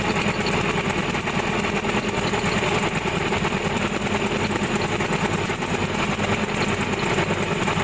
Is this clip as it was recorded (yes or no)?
yes